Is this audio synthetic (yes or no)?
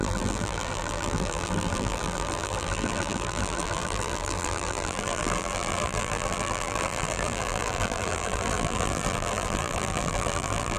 yes